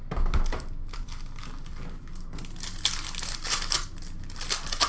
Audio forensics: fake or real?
real